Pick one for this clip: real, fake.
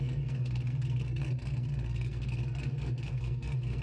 fake